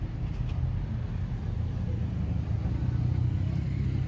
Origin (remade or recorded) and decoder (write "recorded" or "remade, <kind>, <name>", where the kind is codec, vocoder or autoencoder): recorded